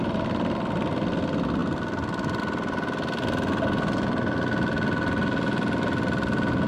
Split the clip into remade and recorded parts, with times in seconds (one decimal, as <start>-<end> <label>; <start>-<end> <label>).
0.0-1.6 recorded; 1.6-2.4 remade; 2.4-6.7 recorded